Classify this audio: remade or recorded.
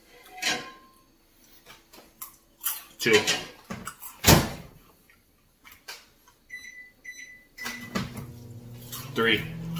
recorded